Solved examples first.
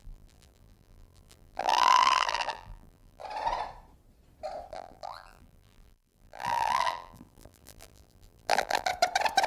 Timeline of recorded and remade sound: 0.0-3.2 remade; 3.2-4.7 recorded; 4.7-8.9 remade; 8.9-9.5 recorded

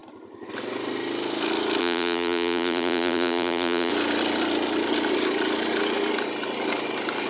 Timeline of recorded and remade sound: 0.0-1.8 recorded; 1.8-3.9 remade; 3.9-7.3 recorded

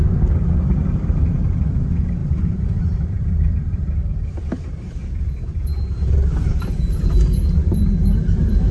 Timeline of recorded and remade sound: 0.0-2.2 recorded; 2.2-3.5 remade; 3.5-5.0 recorded; 5.0-8.7 remade

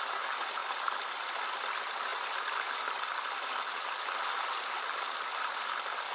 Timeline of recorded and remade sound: 0.0-6.1 recorded

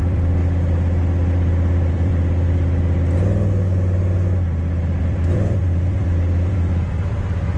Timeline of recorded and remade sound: 0.0-0.4 remade; 0.4-1.3 recorded; 1.3-2.1 remade; 2.1-5.0 recorded; 5.0-7.6 remade

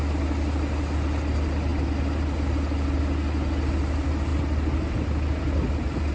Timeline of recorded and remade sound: 0.0-4.3 recorded; 4.3-6.1 remade

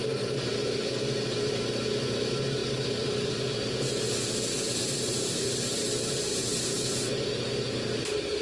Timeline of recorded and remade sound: 0.0-1.5 remade; 1.5-2.6 recorded; 2.6-7.3 remade; 7.3-8.4 recorded